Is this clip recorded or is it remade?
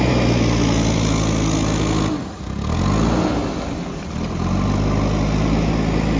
recorded